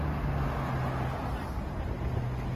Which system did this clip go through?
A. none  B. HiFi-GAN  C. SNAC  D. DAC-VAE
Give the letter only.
A